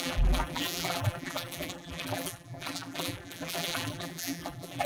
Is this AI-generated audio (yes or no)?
yes